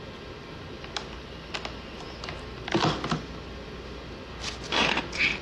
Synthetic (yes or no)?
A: no